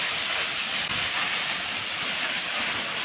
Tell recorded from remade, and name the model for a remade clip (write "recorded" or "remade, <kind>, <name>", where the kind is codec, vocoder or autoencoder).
recorded